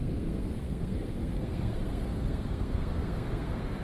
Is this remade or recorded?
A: remade